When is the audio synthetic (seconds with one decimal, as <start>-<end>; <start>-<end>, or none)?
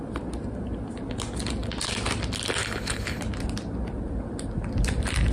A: 2.6-3.2